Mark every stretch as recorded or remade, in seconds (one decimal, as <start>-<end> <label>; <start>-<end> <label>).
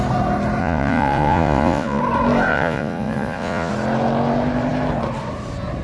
0.0-0.6 recorded; 0.6-2.0 remade; 2.0-2.5 recorded; 2.5-3.7 remade; 3.7-5.8 recorded